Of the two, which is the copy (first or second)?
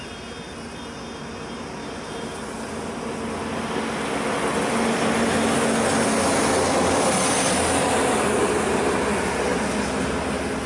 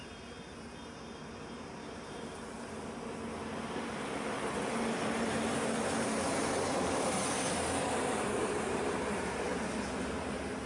second